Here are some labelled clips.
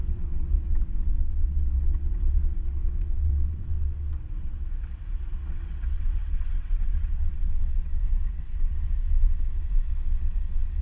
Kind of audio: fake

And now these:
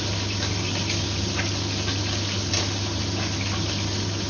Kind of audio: real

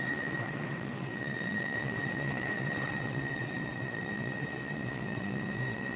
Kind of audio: fake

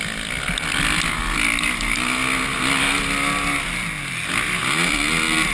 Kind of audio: real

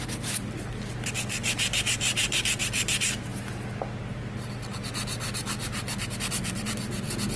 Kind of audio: real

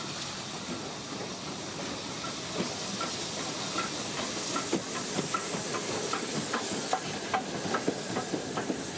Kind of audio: real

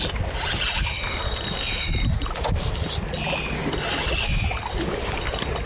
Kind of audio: real